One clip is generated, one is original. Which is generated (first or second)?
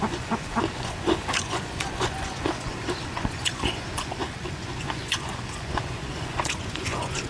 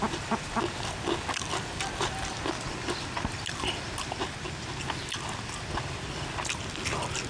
first